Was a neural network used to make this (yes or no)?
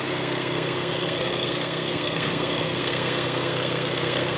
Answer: yes